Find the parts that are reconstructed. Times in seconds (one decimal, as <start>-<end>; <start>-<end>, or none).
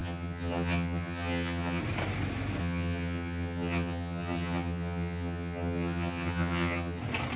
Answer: 0.0-1.8; 2.6-7.0